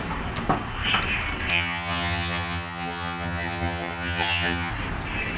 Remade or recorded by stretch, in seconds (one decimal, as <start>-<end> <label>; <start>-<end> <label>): 0.0-1.5 recorded; 1.5-4.7 remade; 4.7-5.4 recorded